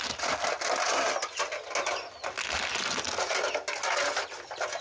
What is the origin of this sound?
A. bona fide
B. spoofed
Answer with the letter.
A